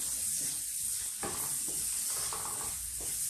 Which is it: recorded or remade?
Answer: recorded